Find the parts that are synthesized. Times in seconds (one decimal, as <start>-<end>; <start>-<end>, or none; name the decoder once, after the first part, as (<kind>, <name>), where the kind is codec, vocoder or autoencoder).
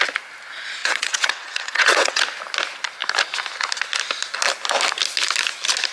0.8-2.2 (vocoder, WaveNeXt)